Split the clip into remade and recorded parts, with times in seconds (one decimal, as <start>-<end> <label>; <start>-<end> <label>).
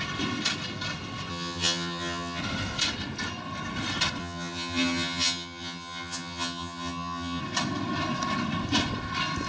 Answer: 0.0-1.3 recorded; 1.3-2.4 remade; 2.4-4.2 recorded; 4.2-7.4 remade; 7.4-9.5 recorded